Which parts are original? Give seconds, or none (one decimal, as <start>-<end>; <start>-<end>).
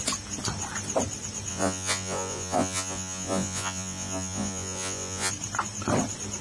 0.0-1.5; 5.3-6.4